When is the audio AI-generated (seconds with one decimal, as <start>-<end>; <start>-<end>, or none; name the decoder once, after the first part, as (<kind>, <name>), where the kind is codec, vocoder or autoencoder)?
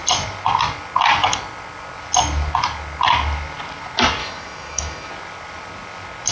4.2-5.1 (autoencoder, DAC-VAE)